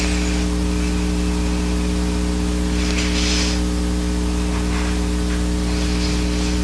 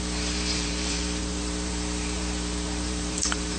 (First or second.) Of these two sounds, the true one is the first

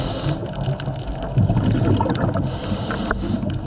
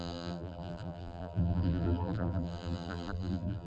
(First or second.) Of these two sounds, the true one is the first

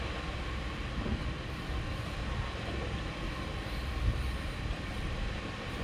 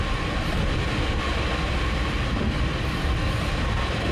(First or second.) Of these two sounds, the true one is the first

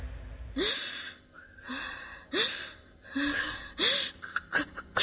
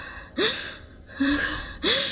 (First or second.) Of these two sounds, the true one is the first